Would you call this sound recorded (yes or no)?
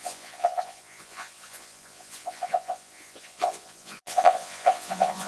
no